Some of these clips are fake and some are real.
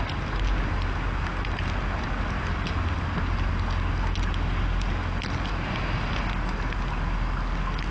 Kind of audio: real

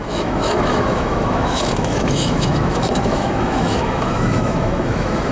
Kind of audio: fake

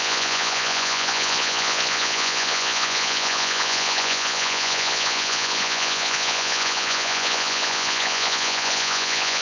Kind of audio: fake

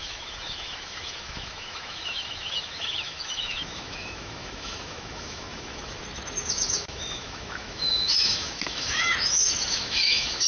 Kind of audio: fake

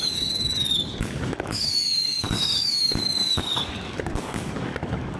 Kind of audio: fake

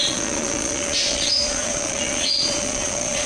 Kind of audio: fake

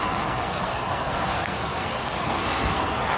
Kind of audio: fake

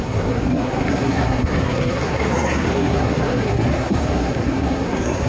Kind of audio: fake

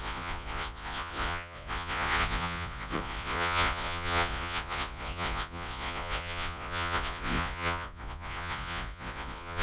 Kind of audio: fake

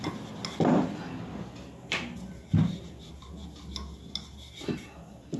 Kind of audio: real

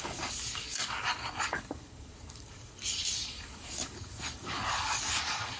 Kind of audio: fake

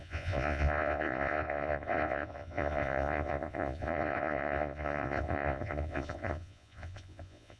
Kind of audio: fake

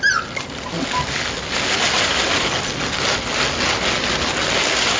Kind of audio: real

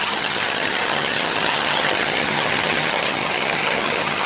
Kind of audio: fake